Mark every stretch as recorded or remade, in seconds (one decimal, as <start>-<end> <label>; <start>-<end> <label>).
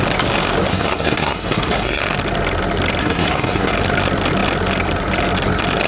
0.0-0.7 recorded; 0.7-2.0 remade; 2.0-3.0 recorded; 3.0-3.7 remade; 3.7-5.9 recorded